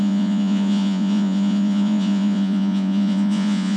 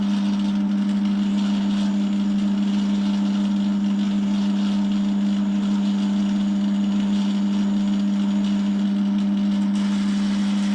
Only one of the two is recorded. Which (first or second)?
second